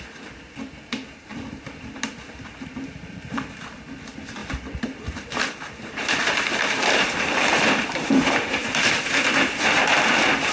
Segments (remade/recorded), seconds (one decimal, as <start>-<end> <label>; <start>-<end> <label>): 0.0-1.3 recorded; 1.3-3.6 remade; 3.6-4.4 recorded; 4.4-8.1 remade; 8.1-10.5 recorded